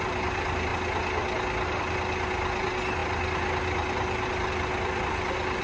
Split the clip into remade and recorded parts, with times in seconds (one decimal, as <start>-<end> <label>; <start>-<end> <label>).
0.0-5.6 recorded